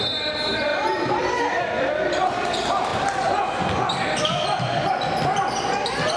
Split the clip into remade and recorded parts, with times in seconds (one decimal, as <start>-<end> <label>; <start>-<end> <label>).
0.0-6.2 recorded